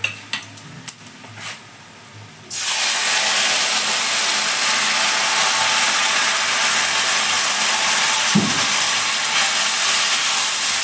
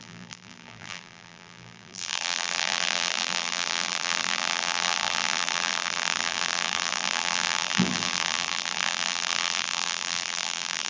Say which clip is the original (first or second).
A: first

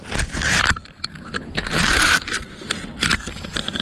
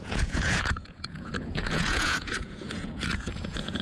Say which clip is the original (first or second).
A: first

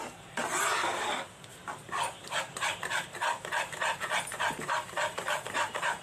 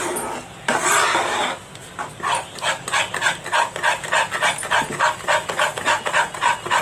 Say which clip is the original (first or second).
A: second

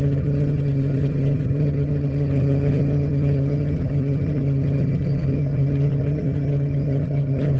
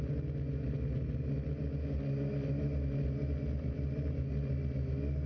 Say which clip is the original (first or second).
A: second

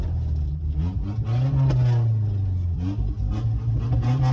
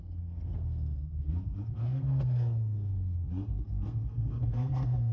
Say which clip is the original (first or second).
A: first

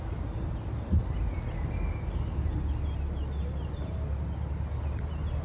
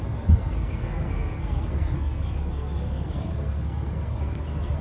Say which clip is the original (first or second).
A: first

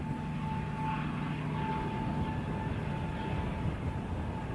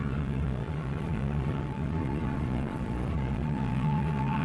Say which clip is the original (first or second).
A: first